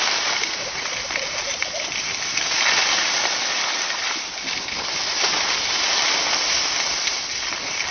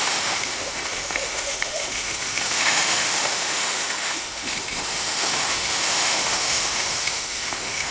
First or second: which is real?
first